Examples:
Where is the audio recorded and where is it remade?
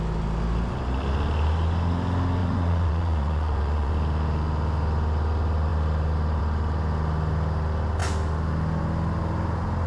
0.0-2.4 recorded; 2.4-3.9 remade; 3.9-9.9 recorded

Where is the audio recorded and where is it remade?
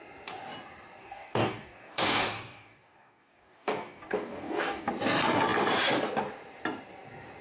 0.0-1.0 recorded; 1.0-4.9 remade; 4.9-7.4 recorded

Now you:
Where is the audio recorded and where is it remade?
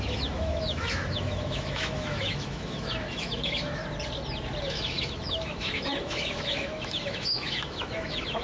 0.0-3.8 remade; 3.8-4.6 recorded; 4.6-8.4 remade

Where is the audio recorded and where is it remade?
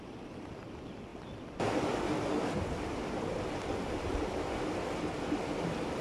0.0-6.0 recorded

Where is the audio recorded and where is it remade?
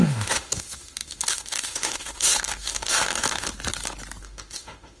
0.0-3.5 remade; 3.5-4.2 recorded; 4.2-5.0 remade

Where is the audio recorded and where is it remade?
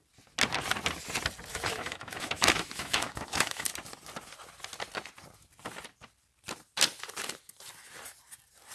0.0-1.5 recorded; 1.5-3.7 remade; 3.7-8.7 recorded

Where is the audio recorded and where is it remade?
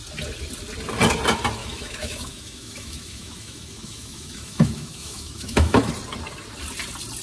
0.0-1.6 recorded; 1.6-5.9 remade; 5.9-7.2 recorded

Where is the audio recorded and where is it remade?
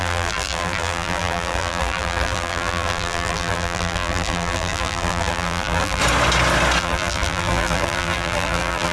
0.0-6.0 remade; 6.0-6.8 recorded; 6.8-8.9 remade